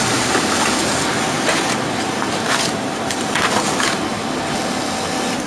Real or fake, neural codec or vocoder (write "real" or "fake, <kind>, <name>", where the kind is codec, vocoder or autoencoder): real